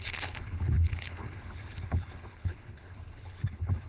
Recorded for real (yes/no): no